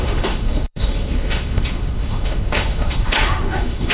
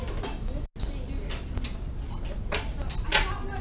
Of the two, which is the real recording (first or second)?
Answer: second